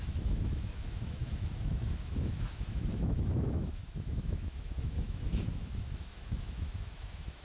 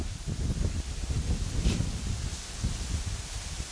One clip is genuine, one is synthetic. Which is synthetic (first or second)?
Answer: first